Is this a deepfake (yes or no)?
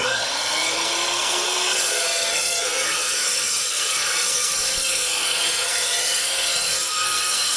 yes